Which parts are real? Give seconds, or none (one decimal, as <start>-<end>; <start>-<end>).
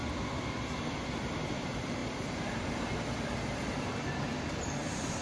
0.0-0.7